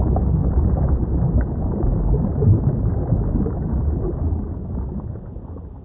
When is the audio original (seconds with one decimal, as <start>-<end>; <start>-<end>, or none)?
0.0-5.8